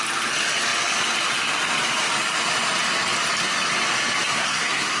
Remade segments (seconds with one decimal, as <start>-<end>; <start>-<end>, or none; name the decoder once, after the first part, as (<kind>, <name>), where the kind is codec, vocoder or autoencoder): 4.3-5.0 (codec, SNAC)